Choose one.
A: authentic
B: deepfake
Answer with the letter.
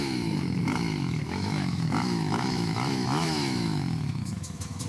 B